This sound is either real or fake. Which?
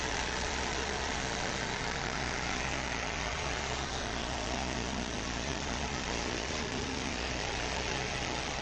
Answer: fake